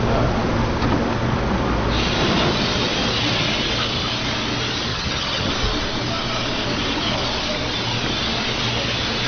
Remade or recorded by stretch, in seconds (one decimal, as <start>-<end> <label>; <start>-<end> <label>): 0.0-4.9 recorded; 4.9-5.5 remade; 5.5-9.3 recorded